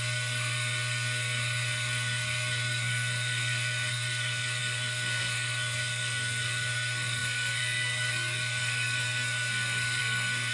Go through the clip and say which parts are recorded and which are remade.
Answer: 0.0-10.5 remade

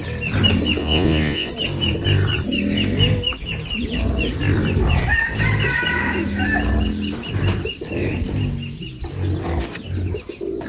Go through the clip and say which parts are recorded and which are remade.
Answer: 0.0-0.8 recorded; 0.8-1.5 remade; 1.5-10.7 recorded

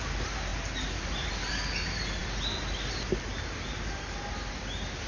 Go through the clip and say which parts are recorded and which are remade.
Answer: 0.0-5.1 recorded

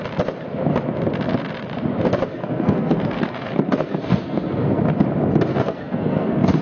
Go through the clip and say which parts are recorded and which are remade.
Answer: 0.0-2.3 recorded; 2.3-4.8 remade; 4.8-5.5 recorded; 5.5-6.6 remade

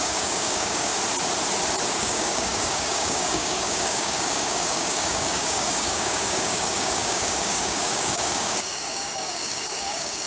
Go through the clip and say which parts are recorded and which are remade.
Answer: 0.0-0.9 remade; 0.9-1.9 recorded; 1.9-10.3 remade